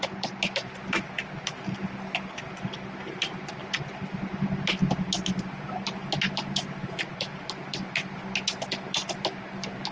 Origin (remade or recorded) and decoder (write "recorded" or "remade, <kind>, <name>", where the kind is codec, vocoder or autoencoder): recorded